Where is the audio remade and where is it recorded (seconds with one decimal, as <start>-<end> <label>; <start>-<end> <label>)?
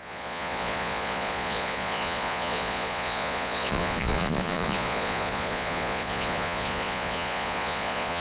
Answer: 0.0-8.2 remade